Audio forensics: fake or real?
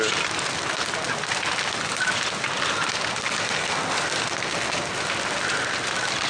real